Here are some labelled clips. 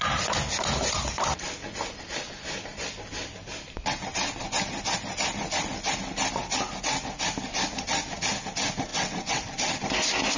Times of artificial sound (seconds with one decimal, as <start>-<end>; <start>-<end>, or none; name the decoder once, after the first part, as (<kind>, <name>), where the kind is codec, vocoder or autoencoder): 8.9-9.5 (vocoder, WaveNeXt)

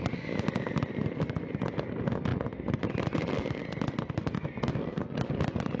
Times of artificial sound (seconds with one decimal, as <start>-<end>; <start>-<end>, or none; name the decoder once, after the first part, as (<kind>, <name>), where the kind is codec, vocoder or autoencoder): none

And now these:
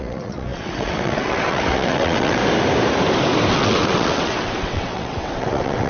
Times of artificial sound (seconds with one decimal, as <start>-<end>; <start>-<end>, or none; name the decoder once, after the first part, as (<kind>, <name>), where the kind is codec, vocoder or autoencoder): 0.0-2.4 (vocoder, WaveNeXt); 3.5-5.9

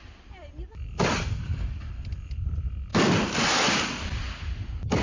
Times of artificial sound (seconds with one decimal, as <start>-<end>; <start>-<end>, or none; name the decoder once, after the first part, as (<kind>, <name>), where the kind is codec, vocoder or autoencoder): none

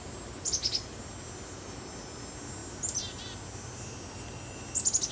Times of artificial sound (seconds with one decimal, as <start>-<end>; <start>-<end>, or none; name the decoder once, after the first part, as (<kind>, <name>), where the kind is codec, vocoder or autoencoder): none

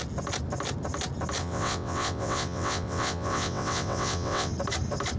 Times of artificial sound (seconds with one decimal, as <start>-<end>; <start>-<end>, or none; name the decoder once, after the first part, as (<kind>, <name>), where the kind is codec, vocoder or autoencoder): 1.4-4.5 (vocoder, WaveNeXt)

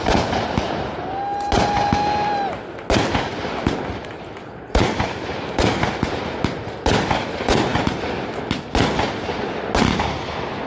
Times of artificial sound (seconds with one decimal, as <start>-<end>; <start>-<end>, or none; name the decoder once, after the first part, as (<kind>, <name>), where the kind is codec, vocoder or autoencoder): none

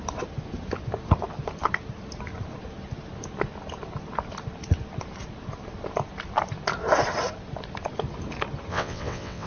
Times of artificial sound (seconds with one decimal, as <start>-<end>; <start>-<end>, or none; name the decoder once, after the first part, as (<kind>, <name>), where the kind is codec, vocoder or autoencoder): 8.7-9.5 (vocoder, WaveNeXt)